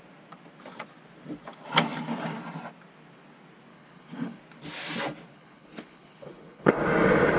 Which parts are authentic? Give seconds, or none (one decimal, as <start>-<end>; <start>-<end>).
0.0-3.7; 4.4-5.3; 6.7-7.4